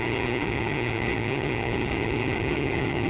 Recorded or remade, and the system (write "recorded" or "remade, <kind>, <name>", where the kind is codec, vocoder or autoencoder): remade, vocoder, HiFi-GAN